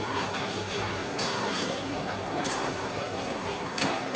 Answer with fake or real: fake